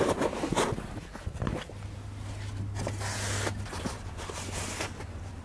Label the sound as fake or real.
real